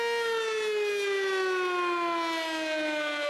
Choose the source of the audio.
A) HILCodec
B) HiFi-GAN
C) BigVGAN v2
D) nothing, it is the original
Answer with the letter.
D